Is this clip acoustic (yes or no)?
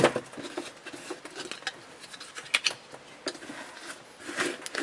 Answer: yes